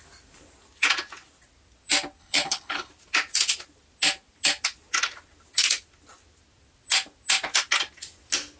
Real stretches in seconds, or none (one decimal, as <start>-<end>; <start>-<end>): 0.0-2.2; 2.9-8.6